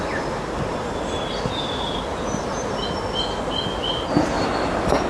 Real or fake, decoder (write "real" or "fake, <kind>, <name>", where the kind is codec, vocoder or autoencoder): real